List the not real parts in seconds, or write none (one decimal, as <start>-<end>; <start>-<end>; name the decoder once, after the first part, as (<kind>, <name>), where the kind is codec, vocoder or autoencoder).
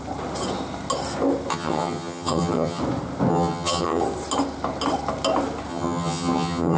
1.5-2.8 (vocoder, HiFi-GAN); 3.3-4.0; 5.7-6.8